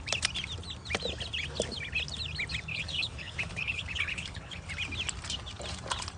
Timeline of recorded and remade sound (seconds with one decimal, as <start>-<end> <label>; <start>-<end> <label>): 0.0-2.7 recorded; 2.7-4.7 remade; 4.7-6.2 recorded